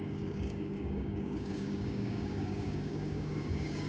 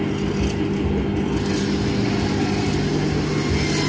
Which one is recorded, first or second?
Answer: second